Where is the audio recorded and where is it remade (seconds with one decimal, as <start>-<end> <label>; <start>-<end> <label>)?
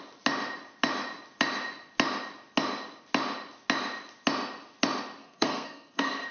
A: 0.0-5.2 recorded; 5.2-6.3 remade